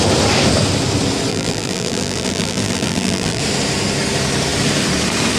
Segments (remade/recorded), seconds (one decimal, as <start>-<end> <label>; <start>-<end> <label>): 0.0-1.3 recorded; 1.3-3.4 remade; 3.4-5.4 recorded